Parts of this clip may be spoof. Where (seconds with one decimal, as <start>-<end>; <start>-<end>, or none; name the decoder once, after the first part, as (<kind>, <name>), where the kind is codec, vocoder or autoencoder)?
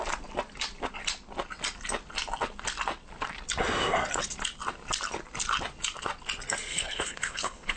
6.7-7.8 (codec, HILCodec)